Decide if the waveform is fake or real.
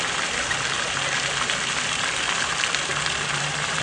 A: real